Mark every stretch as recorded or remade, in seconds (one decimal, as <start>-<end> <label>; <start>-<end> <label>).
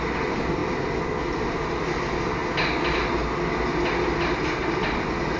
0.0-5.4 recorded